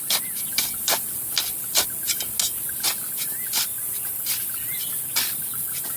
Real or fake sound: real